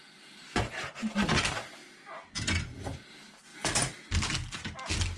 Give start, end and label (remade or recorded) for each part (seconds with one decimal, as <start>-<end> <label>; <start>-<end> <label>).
0.0-3.5 recorded; 3.5-4.1 remade; 4.1-5.2 recorded